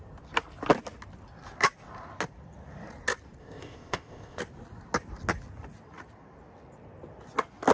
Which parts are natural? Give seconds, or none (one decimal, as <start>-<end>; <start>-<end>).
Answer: 0.0-3.4; 4.4-7.7